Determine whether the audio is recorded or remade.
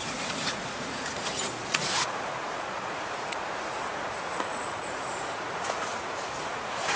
remade